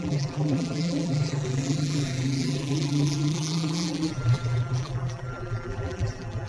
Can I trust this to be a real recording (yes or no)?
no